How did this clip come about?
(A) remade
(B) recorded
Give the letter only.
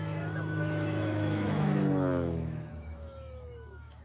A